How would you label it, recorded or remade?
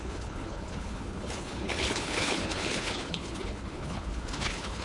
remade